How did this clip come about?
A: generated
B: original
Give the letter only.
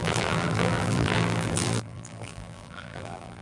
A